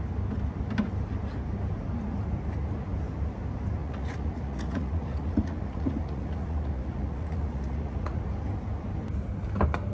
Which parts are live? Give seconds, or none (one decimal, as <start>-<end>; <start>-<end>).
0.0-3.8; 8.2-9.9